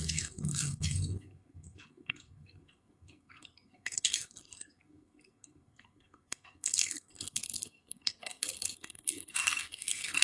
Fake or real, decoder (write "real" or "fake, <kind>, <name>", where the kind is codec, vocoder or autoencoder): fake, codec, SNAC